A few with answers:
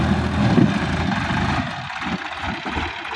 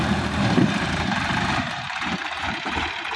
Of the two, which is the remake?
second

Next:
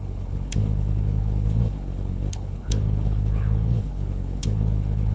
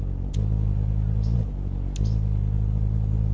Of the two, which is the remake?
first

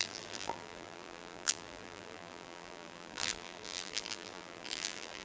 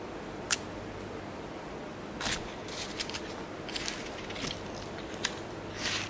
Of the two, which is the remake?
first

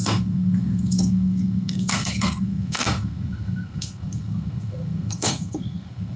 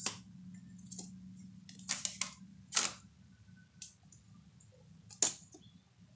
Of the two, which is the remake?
first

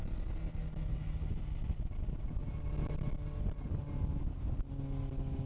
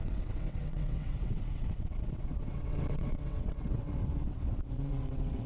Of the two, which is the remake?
second